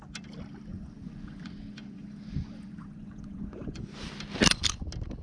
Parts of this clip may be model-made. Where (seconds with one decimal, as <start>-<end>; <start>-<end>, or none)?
0.7-3.8